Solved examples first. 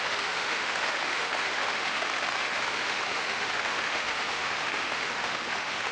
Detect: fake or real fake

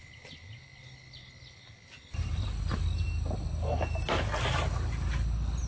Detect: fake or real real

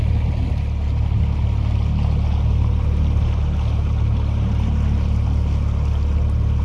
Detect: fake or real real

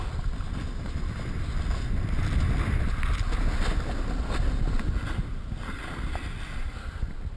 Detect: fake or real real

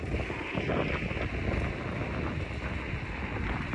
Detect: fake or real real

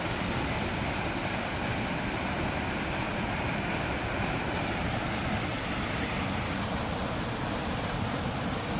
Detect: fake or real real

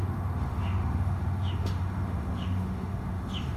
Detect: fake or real fake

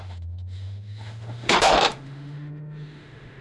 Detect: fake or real fake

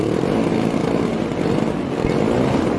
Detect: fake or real real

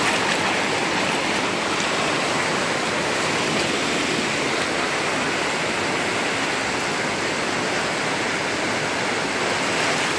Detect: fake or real real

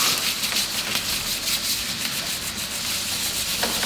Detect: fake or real real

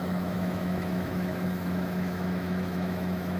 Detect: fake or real fake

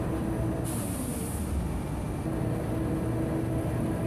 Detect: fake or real real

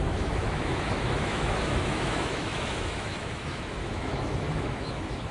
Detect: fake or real fake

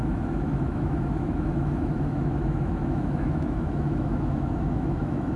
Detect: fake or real fake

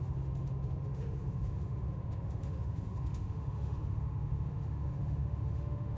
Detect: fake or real fake